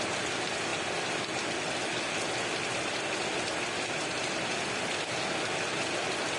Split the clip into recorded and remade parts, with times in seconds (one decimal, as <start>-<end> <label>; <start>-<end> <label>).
0.0-6.4 recorded